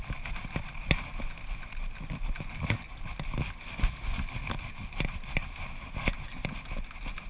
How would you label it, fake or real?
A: real